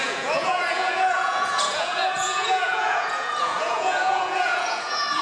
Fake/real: fake